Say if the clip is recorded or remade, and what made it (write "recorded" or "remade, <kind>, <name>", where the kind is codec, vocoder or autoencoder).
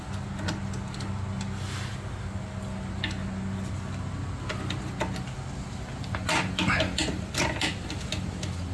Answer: recorded